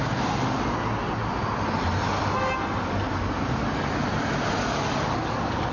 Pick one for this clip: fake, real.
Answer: real